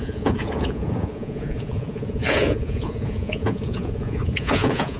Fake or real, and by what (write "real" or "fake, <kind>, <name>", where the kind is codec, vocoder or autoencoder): fake, vocoder, Vocos